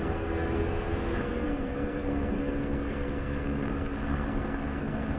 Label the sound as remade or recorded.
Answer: remade